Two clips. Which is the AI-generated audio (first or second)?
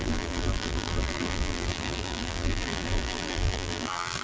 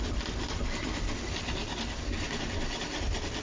first